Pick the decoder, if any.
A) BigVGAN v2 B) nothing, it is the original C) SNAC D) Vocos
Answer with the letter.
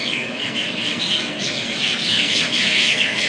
C